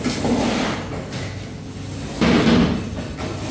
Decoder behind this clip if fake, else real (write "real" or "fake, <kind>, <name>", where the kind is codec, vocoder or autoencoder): real